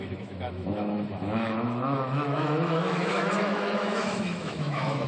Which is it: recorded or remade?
remade